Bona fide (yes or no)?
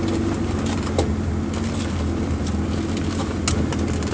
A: yes